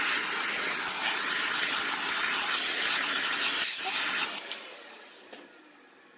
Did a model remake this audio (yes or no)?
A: no